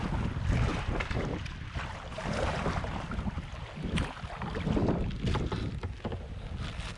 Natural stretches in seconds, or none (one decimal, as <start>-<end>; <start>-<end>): 0.0-0.7; 3.5-4.8; 5.9-7.0